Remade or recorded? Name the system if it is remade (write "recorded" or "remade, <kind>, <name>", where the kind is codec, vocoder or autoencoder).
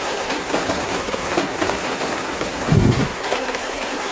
remade, codec, SNAC